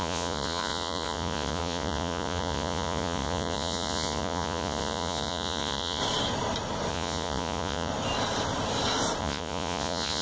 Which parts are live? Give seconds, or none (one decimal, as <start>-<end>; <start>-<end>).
6.0-6.9; 7.9-9.2